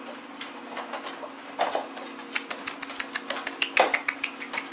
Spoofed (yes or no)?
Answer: no